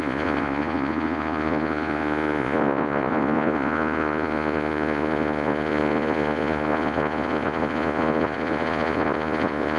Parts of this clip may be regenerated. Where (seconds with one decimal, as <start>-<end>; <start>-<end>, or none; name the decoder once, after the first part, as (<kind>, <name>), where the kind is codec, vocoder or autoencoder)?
0.0-9.8 (vocoder, Vocos)